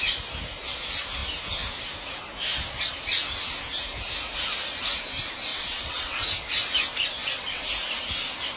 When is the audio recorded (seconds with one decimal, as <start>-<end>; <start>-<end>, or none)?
0.0-5.5; 6.2-7.2; 7.7-8.6